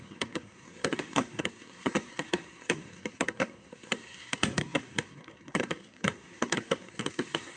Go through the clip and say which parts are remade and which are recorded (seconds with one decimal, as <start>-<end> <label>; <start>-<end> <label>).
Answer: 0.0-7.6 remade